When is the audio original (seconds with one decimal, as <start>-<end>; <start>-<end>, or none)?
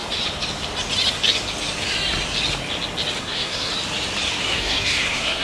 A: 0.0-3.2; 3.7-4.4